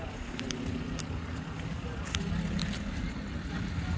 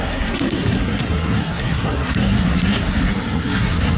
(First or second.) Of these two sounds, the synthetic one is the second